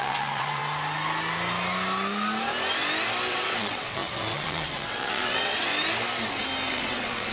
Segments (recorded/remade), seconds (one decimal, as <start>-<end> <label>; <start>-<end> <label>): 0.0-0.6 remade; 0.6-3.3 recorded; 3.3-5.7 remade; 5.7-6.7 recorded; 6.7-7.3 remade